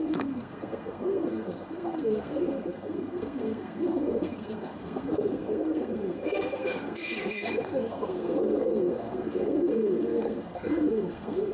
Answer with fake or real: fake